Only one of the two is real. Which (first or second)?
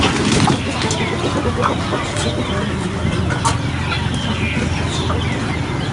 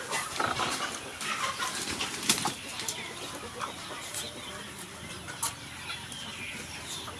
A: first